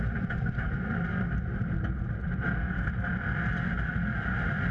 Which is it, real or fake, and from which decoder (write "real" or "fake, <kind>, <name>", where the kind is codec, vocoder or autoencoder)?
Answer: fake, vocoder, BigVGAN v2